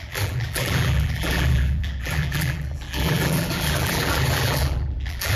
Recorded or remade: remade